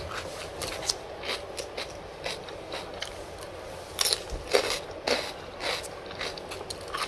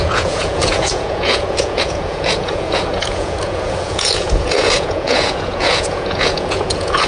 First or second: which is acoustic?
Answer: first